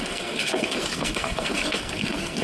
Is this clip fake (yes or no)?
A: yes